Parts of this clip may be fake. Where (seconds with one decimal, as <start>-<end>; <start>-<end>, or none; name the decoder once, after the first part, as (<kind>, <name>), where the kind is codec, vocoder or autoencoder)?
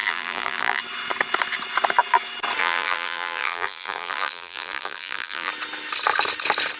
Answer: 0.0-0.8 (vocoder, BigVGAN v2); 2.6-5.5